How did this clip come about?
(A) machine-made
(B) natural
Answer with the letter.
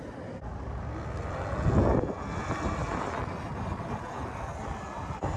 B